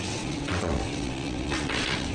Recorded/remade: remade